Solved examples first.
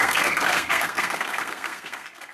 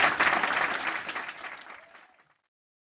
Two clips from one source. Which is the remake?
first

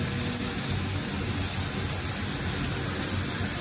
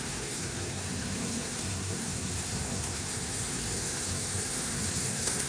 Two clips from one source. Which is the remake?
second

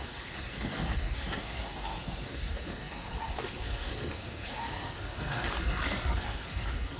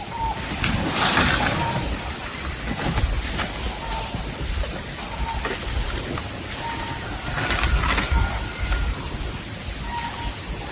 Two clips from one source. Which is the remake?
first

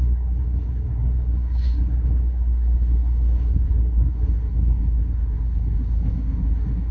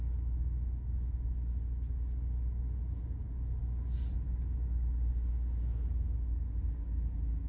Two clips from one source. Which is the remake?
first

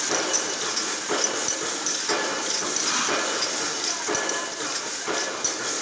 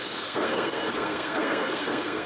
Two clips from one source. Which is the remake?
second